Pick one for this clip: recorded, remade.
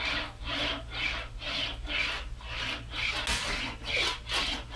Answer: recorded